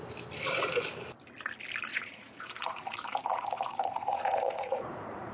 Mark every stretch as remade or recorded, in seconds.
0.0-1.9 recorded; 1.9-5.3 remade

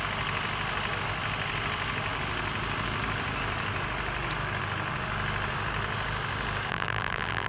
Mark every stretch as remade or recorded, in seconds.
0.0-6.7 recorded; 6.7-7.5 remade

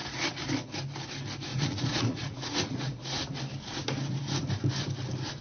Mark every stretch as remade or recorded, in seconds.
0.0-1.5 recorded; 1.5-3.3 remade; 3.3-5.4 recorded

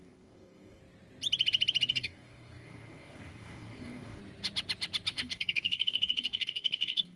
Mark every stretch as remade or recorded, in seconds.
0.0-0.8 remade; 0.8-1.9 recorded; 1.9-4.2 remade; 4.2-5.1 recorded; 5.1-7.2 remade

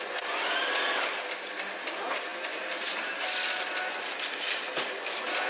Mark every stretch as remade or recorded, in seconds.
0.0-5.5 recorded

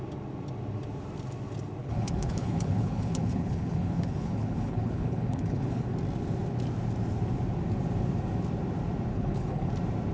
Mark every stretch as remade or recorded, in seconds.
0.0-1.8 recorded; 1.8-5.9 remade; 5.9-9.1 recorded; 9.1-9.7 remade; 9.7-10.1 recorded

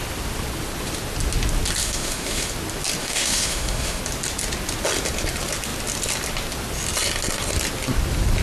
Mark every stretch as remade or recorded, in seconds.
0.0-1.8 recorded; 1.8-2.5 remade; 2.5-3.0 recorded; 3.0-4.0 remade; 4.0-8.4 recorded

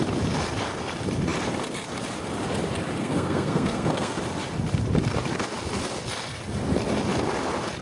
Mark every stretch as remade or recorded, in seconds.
0.0-3.0 recorded; 3.0-4.2 remade; 4.2-7.8 recorded